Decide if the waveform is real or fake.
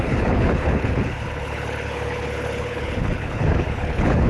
fake